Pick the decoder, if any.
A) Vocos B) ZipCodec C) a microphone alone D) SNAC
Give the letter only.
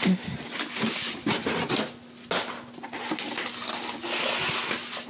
C